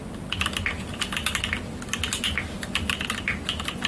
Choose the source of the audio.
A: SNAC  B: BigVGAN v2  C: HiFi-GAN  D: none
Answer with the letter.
D